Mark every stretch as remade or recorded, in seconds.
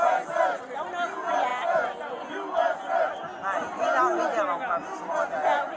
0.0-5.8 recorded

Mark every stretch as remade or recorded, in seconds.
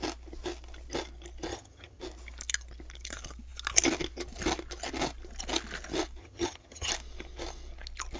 0.0-1.5 recorded; 1.5-2.0 remade; 2.0-6.2 recorded; 6.2-6.9 remade; 6.9-8.2 recorded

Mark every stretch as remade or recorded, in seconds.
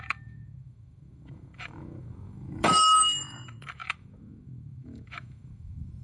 0.0-6.0 remade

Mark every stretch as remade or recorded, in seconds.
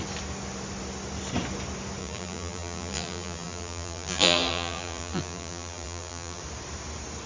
0.0-2.0 recorded; 2.0-6.4 remade; 6.4-7.3 recorded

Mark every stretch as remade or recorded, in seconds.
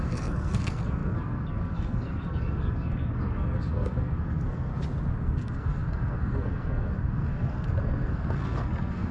0.0-4.7 remade; 4.7-5.2 recorded; 5.2-9.1 remade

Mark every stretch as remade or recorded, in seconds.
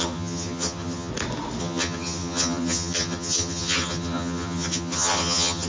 0.0-1.1 remade; 1.1-1.6 recorded; 1.6-5.7 remade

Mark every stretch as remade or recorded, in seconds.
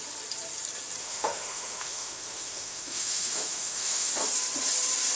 0.0-1.0 recorded; 1.0-4.1 remade; 4.1-5.2 recorded